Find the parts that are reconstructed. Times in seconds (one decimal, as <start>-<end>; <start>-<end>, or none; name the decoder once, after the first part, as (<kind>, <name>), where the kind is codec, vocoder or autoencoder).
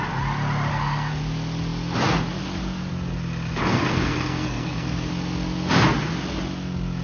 0.7-1.2 (codec, SNAC); 3.7-5.1